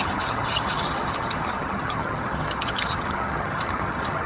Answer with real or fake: fake